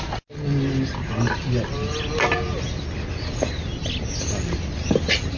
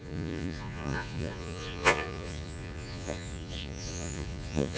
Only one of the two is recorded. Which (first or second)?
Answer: first